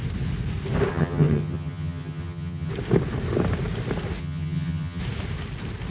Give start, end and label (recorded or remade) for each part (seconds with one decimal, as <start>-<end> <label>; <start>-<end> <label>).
0.0-0.9 recorded; 0.9-2.7 remade; 2.7-4.2 recorded; 4.2-5.0 remade; 5.0-5.9 recorded